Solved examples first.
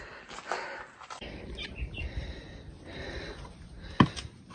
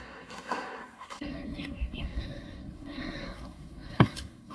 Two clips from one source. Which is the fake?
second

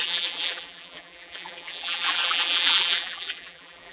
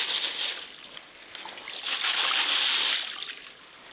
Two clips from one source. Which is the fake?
first